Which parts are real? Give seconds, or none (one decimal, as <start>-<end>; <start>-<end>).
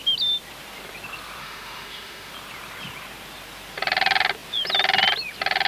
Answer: 0.0-1.4; 2.3-5.7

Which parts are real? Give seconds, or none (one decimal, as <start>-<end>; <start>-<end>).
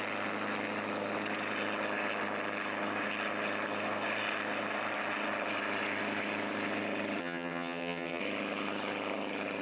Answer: 0.0-7.2; 8.2-9.6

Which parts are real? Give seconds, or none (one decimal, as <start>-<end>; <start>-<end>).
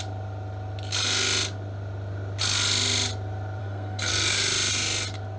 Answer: 0.0-3.6; 4.1-5.4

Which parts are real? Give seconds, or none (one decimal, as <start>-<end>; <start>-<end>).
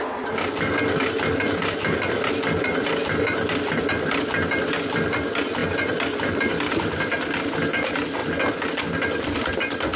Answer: 0.0-10.0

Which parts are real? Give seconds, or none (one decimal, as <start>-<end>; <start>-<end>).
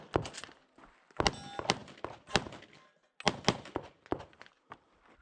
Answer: 0.0-5.2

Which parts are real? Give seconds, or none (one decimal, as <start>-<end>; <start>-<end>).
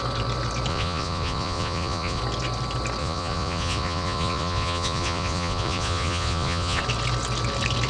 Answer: 0.0-0.7; 2.2-3.0; 6.8-7.9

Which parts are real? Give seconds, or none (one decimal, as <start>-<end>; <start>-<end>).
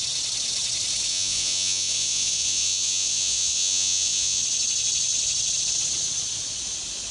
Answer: 0.0-1.1; 4.4-7.1